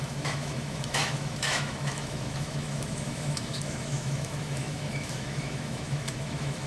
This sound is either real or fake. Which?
fake